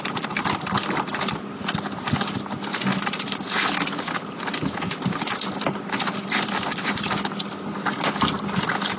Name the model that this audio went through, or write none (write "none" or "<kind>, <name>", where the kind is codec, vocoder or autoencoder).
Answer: none